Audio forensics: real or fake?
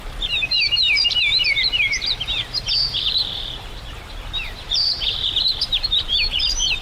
fake